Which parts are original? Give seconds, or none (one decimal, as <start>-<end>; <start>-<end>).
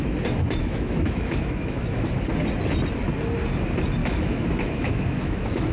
0.0-0.6; 2.1-4.0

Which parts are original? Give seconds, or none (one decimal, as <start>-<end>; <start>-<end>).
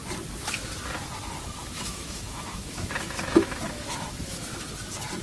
0.0-1.6; 4.7-5.2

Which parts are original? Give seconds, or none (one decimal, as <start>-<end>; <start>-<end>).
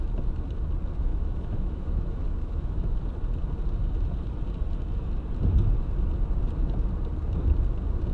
0.0-1.1; 3.0-8.1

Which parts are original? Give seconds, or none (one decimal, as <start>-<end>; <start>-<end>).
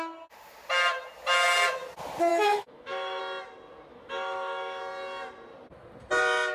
0.0-2.3; 3.2-3.9; 4.8-6.5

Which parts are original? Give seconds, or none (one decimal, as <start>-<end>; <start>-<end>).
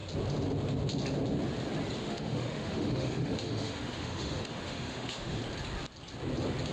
0.0-2.0; 5.4-6.7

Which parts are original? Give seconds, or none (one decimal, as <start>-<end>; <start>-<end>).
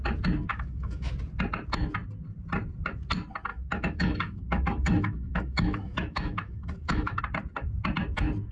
0.0-0.5; 1.1-3.5; 7.2-8.5